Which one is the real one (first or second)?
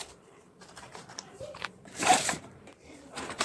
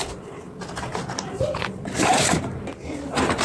second